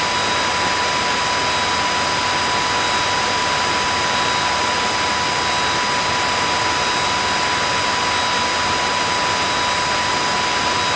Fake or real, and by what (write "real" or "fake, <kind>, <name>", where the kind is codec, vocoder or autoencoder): real